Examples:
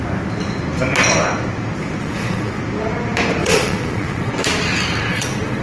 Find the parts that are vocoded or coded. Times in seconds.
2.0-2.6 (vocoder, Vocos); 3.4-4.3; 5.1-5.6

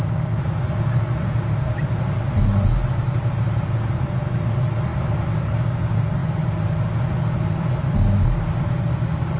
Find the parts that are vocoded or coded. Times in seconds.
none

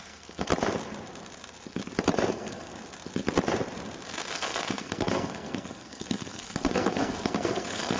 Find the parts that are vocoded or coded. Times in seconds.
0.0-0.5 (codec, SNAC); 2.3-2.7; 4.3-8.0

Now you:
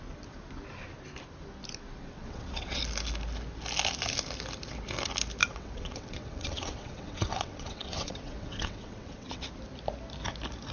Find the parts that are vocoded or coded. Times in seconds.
2.0-2.8 (vocoder, WaveNeXt); 5.4-9.5

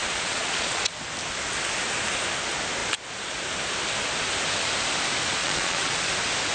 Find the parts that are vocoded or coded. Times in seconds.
0.0-0.9 (vocoder, Vocos); 5.4-6.1

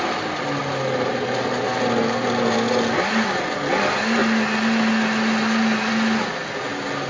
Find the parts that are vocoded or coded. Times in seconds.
none

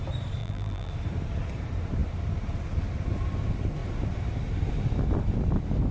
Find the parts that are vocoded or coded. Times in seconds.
0.4-0.9 (vocoder, BigVGAN v2)